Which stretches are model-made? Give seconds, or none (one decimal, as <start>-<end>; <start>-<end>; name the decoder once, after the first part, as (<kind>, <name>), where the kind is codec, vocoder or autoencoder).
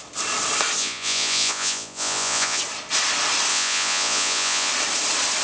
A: 0.8-2.6 (vocoder, Vocos); 3.5-4.7